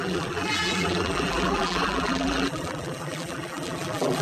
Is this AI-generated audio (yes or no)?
yes